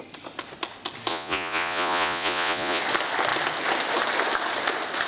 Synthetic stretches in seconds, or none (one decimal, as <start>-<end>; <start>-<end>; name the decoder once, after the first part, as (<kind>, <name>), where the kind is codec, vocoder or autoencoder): 1.1-2.8 (vocoder, Vocos)